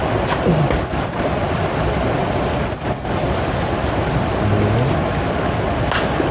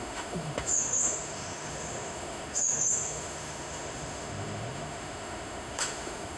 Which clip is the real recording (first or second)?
first